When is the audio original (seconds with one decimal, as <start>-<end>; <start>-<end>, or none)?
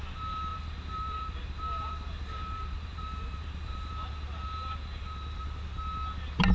0.0-0.5; 3.9-4.6; 5.5-6.5